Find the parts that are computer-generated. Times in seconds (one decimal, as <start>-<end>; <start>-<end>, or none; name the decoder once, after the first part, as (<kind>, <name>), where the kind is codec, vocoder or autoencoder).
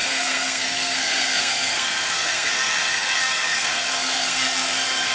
0.0-5.1 (codec, SNAC)